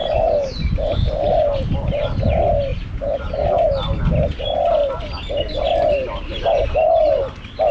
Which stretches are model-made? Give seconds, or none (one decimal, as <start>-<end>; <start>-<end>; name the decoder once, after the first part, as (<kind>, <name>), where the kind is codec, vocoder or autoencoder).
0.0-2.3 (vocoder, BigVGAN v2); 4.8-5.4; 6.0-7.0